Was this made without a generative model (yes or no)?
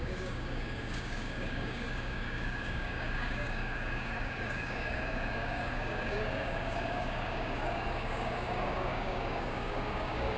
no